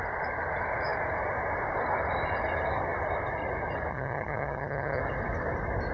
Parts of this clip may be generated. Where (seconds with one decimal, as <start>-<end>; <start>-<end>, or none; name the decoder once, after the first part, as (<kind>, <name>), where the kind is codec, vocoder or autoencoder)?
3.9-5.0 (vocoder, HiFi-GAN)